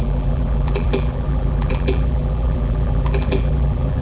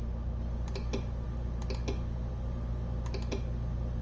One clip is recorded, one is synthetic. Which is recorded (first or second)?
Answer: second